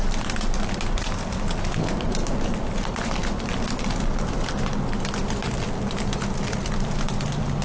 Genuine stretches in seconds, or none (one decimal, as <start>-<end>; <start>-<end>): 0.0-7.6